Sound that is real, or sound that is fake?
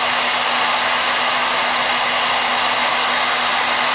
real